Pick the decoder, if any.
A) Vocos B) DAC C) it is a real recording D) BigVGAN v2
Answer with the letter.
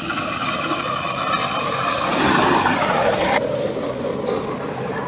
D